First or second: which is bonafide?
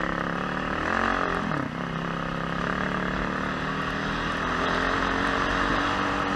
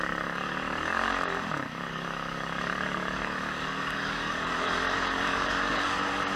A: first